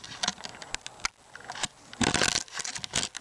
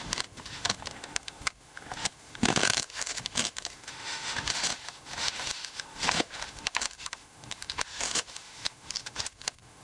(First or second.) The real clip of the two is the first